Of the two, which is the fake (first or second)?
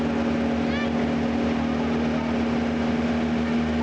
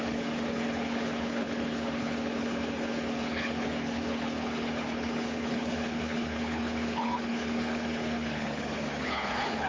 second